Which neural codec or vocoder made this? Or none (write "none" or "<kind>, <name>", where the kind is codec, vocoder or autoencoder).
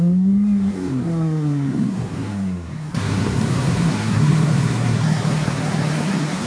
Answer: codec, SNAC